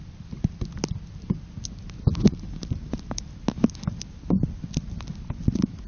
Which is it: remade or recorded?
recorded